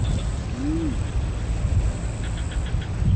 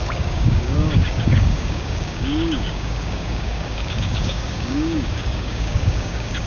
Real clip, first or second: first